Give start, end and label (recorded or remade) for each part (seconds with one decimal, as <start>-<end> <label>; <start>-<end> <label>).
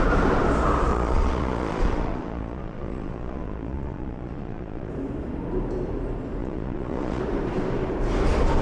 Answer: 0.0-0.9 recorded; 0.9-4.9 remade; 4.9-6.4 recorded; 6.4-7.2 remade; 7.2-8.6 recorded